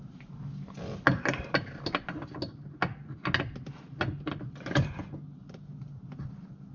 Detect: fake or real real